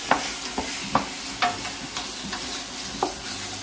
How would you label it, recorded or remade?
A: recorded